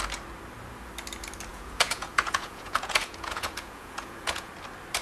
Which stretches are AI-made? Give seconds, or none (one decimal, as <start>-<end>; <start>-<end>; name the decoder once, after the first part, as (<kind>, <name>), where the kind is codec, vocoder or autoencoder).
1.5-4.5 (vocoder, Vocos)